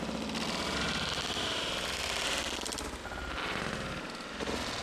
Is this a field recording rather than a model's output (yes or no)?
yes